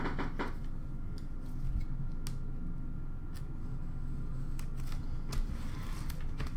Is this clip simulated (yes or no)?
no